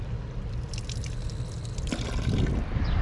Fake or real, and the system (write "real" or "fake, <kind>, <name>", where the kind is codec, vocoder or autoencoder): real